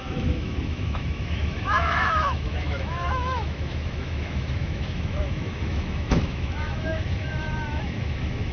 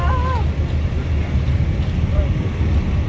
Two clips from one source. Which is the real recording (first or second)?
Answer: second